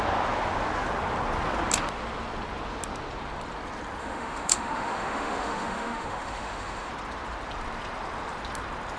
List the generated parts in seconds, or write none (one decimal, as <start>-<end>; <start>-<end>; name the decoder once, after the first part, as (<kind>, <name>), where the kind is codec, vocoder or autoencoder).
4.0-6.9 (autoencoder, DAC-VAE)